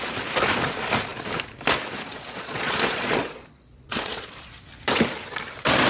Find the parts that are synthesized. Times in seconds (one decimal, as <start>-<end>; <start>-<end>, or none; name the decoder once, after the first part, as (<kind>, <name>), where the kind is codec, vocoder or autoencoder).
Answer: 2.1-4.3 (vocoder, Vocos)